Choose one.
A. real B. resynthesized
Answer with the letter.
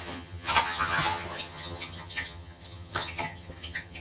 B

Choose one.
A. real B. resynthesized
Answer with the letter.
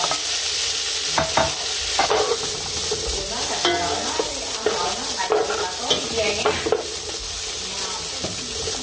A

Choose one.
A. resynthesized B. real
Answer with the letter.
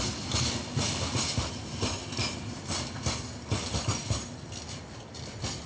B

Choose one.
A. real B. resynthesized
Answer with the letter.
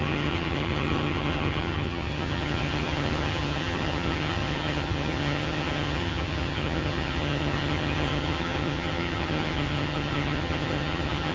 B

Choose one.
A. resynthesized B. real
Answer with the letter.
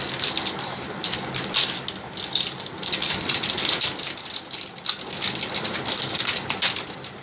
B